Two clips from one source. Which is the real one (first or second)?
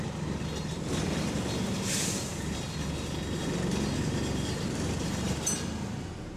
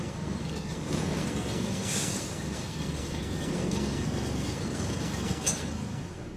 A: first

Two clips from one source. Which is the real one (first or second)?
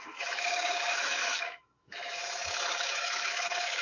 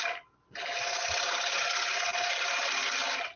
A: second